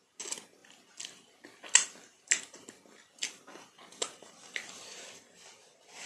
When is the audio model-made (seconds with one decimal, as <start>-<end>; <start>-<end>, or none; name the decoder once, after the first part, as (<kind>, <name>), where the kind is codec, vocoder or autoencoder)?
none